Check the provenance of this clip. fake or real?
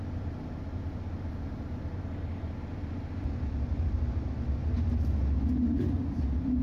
real